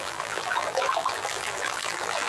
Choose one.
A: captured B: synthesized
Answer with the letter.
B